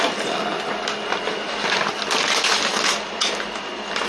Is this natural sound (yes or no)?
yes